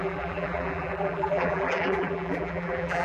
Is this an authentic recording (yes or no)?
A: no